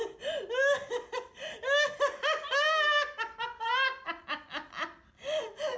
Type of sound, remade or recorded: recorded